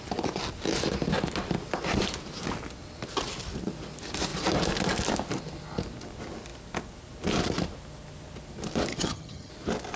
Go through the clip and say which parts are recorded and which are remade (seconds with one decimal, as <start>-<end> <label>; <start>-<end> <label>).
0.0-8.9 recorded; 8.9-9.5 remade; 9.5-10.0 recorded